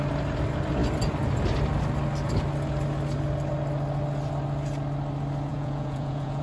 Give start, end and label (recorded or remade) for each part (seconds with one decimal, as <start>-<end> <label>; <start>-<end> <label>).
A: 0.0-5.5 recorded; 5.5-6.4 remade